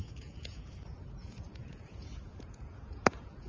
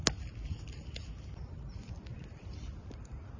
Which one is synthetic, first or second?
first